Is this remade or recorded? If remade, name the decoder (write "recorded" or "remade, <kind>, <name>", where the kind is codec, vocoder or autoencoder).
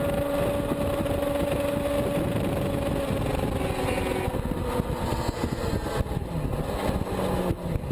recorded